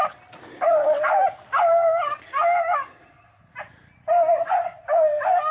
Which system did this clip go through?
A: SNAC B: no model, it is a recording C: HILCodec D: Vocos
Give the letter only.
B